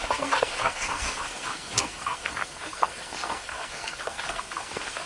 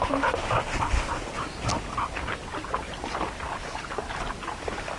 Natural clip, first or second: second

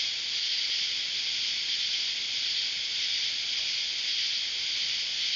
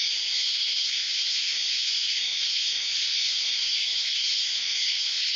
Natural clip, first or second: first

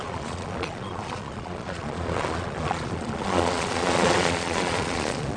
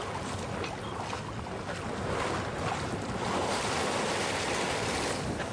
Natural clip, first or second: second